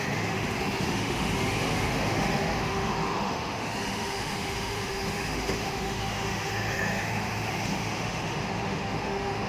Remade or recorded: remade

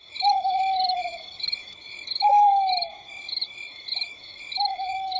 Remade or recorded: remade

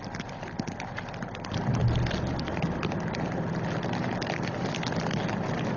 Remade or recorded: recorded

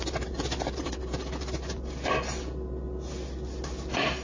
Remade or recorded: recorded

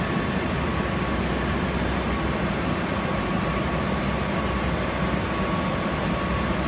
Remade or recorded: recorded